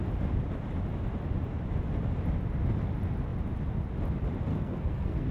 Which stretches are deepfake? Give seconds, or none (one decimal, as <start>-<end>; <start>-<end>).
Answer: 4.5-5.3